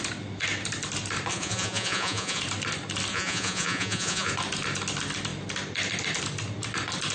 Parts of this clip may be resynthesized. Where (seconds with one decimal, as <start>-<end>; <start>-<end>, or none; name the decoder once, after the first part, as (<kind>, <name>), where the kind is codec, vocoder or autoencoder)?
1.3-2.4 (vocoder, Vocos); 3.1-4.3

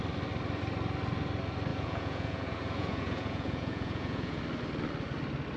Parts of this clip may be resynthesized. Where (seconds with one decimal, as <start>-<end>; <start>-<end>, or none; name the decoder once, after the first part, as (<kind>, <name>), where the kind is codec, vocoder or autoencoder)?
1.7-4.4 (vocoder, Vocos)